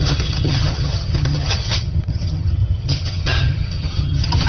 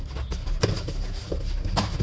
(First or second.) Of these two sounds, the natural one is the second